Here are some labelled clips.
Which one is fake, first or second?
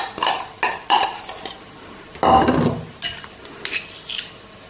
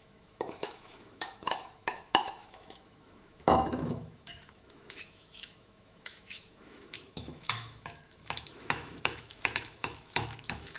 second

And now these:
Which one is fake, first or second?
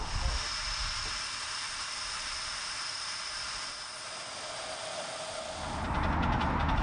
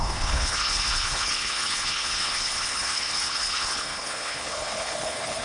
second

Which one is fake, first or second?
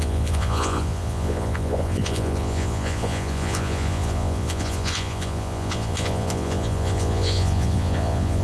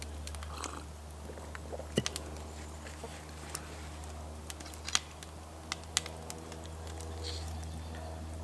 first